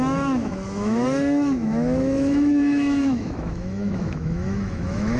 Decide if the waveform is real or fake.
fake